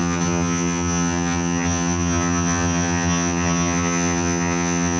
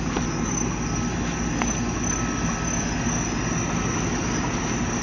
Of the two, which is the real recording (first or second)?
second